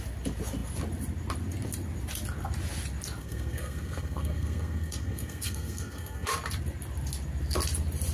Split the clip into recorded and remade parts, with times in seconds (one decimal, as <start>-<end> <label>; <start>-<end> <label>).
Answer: 0.0-3.2 recorded; 3.2-6.3 remade; 6.3-8.1 recorded